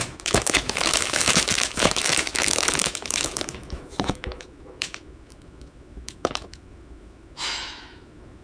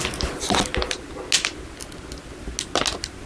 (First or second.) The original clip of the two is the second